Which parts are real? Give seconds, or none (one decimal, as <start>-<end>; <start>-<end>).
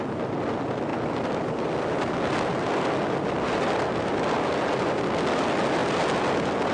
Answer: 0.0-6.7